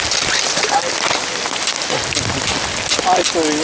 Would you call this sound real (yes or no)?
yes